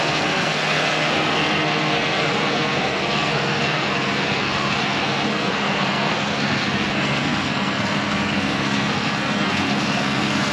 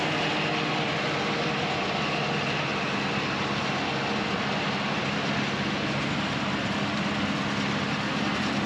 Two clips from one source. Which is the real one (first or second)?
second